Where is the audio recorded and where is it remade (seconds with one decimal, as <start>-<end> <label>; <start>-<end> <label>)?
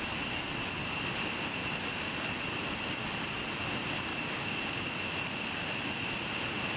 0.0-4.1 recorded; 4.1-4.9 remade; 4.9-6.8 recorded